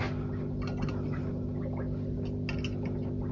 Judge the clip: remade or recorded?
recorded